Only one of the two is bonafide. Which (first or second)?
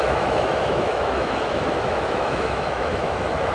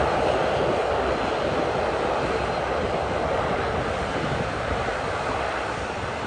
second